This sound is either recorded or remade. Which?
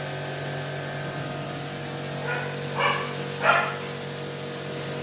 recorded